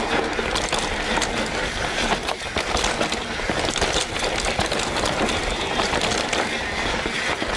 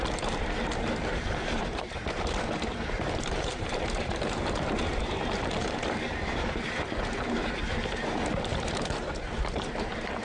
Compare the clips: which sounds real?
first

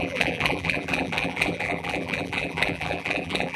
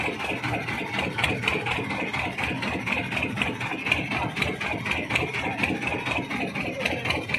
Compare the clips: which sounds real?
second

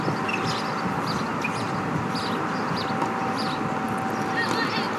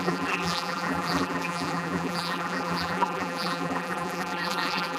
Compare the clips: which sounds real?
first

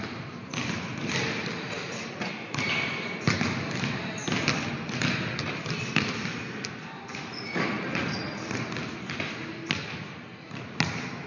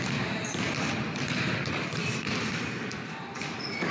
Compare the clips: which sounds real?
first